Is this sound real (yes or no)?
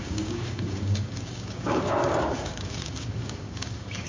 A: no